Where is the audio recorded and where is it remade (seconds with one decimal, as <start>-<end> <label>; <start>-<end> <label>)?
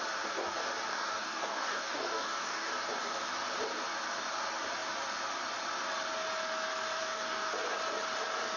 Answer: 0.0-0.9 recorded; 0.9-2.7 remade; 2.7-7.0 recorded; 7.0-7.5 remade; 7.5-8.6 recorded